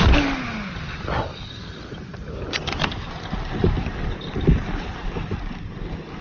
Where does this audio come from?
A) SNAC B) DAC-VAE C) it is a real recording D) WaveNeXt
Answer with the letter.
C